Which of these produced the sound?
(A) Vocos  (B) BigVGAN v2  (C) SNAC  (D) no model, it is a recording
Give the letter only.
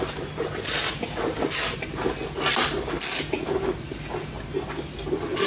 D